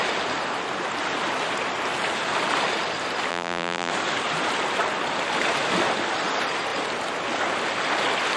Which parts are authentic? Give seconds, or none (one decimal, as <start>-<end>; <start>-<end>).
0.0-3.3; 3.9-8.4